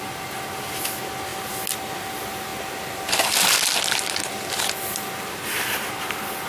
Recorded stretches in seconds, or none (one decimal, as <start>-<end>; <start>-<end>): 0.0-6.5